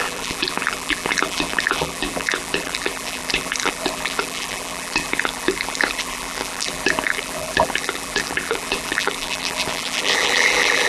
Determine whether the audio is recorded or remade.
remade